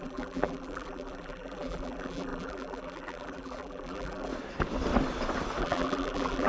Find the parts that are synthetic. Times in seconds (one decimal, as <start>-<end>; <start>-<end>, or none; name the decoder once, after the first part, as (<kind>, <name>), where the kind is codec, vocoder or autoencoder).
0.0-4.3 (vocoder, BigVGAN v2); 5.6-6.5